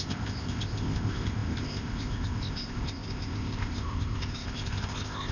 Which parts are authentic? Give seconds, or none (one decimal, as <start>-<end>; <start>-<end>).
none